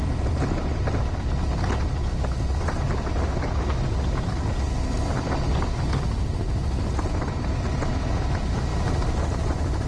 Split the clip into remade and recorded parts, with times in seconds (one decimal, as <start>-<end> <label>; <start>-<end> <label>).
0.0-9.9 recorded